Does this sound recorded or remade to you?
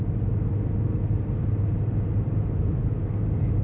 recorded